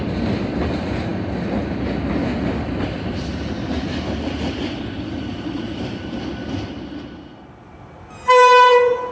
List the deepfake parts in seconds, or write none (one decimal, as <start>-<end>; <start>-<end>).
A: none